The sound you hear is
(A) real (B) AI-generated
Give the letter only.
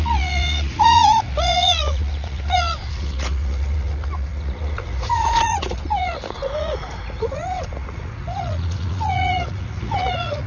B